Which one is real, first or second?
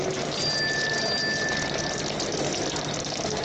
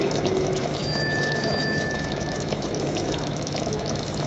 first